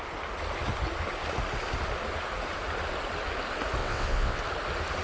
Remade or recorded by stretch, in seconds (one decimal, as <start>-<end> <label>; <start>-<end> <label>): 0.0-3.8 recorded; 3.8-4.4 remade; 4.4-5.0 recorded

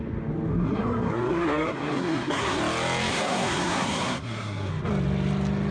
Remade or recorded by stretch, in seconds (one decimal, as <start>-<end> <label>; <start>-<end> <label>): 0.0-0.5 recorded; 0.5-2.6 remade; 2.6-3.1 recorded; 3.1-4.7 remade; 4.7-5.7 recorded

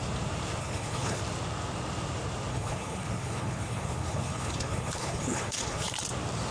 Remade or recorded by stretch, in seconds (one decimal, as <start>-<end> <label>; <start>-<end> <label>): 0.0-0.6 recorded; 0.6-1.2 remade; 1.2-2.5 recorded; 2.5-5.9 remade; 5.9-6.5 recorded